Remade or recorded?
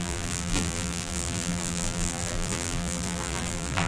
remade